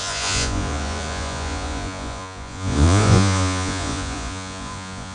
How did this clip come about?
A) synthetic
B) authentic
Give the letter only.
A